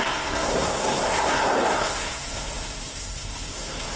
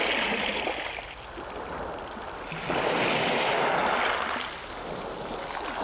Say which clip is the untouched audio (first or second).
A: second